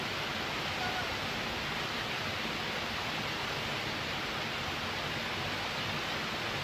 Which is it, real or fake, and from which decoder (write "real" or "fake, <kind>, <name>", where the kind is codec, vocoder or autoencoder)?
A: real